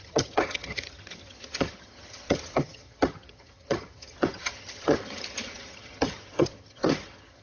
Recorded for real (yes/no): no